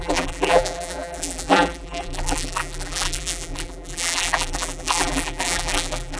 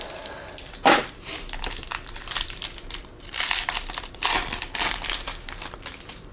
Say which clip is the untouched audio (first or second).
second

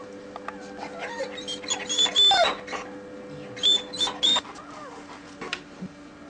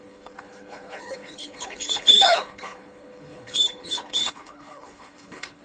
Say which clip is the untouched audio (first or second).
first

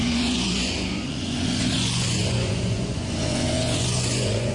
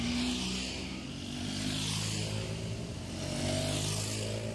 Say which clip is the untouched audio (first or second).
second